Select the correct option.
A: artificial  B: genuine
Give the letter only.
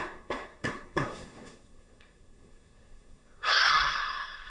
A